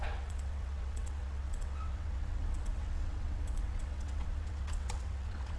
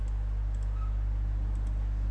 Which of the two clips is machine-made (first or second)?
first